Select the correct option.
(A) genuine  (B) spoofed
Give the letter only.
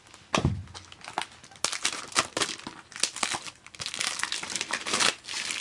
A